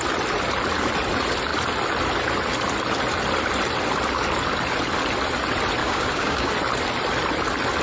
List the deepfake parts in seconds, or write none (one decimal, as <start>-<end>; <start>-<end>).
5.8-6.5